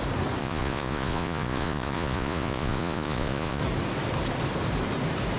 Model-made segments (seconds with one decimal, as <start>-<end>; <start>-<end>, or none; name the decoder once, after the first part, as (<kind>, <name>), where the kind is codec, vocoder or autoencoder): 0.4-3.6 (vocoder, Vocos)